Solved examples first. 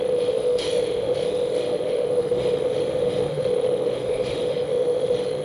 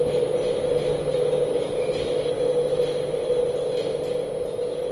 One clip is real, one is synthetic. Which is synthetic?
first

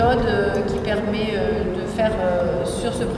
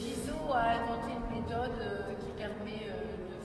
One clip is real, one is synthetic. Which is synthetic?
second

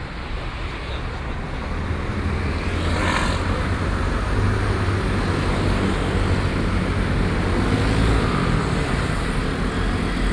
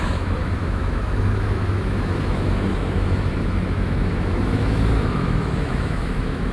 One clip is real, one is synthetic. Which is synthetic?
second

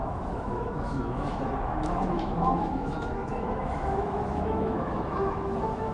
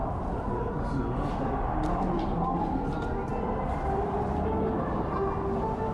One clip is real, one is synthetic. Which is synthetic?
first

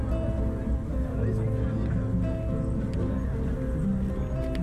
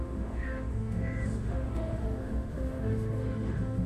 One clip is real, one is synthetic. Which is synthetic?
second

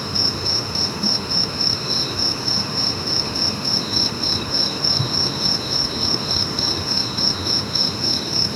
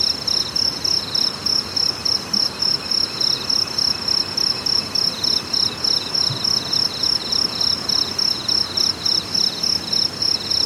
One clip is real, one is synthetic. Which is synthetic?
first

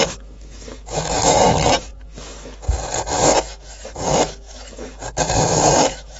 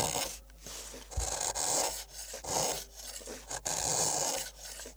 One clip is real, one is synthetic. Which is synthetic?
first